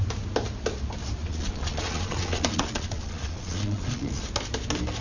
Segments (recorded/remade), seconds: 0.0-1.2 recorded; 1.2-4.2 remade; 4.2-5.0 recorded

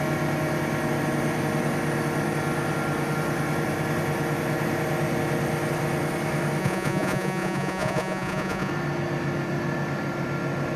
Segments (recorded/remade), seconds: 0.0-6.6 recorded; 6.6-8.7 remade; 8.7-10.8 recorded

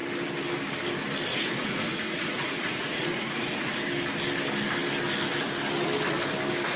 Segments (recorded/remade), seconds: 0.0-1.3 recorded; 1.3-3.8 remade; 3.8-6.8 recorded

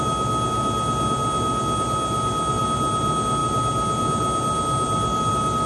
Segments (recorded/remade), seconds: 0.0-5.7 recorded

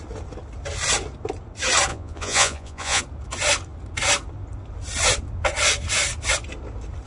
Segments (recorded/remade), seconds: 0.0-1.9 recorded; 1.9-3.0 remade; 3.0-7.1 recorded

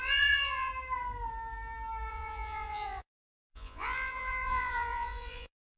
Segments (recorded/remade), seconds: 0.0-0.7 remade; 0.7-2.1 recorded; 2.1-5.8 remade

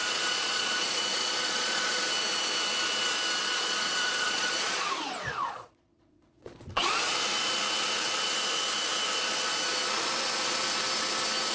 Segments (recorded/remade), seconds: 0.0-2.0 remade; 2.0-3.4 recorded; 3.4-6.9 remade; 6.9-11.5 recorded